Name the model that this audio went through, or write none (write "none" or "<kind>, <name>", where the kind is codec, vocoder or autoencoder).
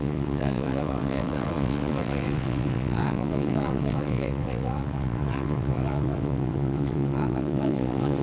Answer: vocoder, WaveNeXt